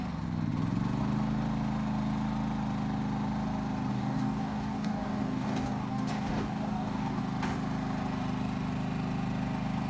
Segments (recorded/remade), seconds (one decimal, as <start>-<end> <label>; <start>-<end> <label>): 0.0-3.9 recorded; 3.9-7.2 remade; 7.2-9.9 recorded